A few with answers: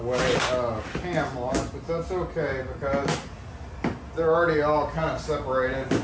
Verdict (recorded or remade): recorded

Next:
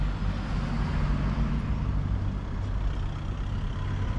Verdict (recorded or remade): recorded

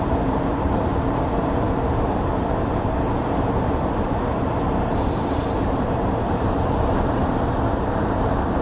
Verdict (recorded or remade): remade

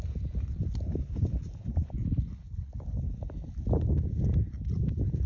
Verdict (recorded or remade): recorded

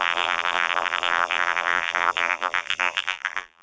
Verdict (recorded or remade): remade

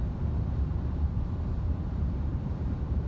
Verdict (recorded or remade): remade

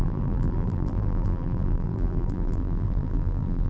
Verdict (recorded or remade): remade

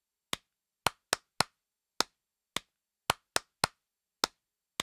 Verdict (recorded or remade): recorded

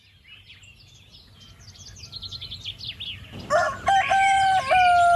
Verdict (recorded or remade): recorded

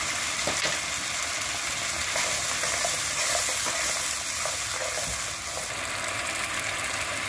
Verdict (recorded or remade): recorded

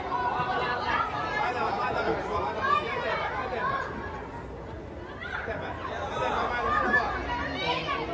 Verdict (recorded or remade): recorded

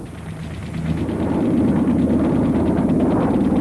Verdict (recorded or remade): recorded